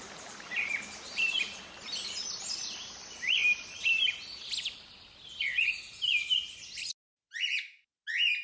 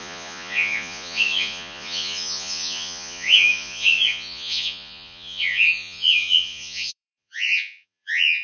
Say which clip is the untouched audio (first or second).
first